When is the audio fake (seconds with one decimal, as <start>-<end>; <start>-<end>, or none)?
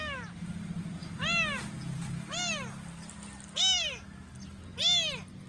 none